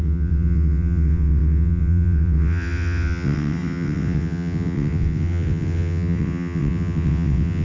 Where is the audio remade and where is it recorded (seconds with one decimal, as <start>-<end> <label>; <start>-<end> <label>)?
0.0-7.6 remade